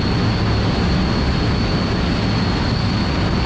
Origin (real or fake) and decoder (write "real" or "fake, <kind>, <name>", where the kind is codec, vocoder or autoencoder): real